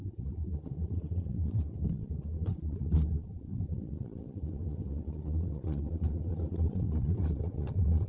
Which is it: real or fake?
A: fake